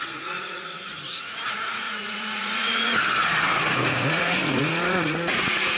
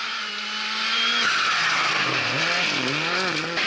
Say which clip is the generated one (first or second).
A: first